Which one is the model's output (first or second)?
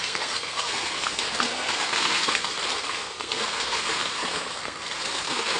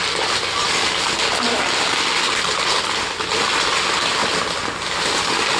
first